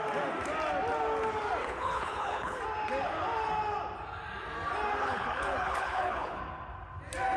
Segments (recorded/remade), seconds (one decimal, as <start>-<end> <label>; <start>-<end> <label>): 0.0-1.6 recorded; 1.6-2.6 remade; 2.6-5.0 recorded; 5.0-6.4 remade; 6.4-7.4 recorded